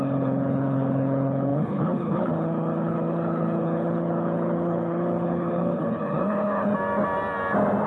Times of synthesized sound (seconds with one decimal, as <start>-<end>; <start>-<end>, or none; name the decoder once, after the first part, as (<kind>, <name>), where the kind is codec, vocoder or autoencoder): 0.0-6.7 (codec, HILCodec)